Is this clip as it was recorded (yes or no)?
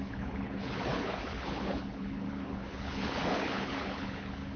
no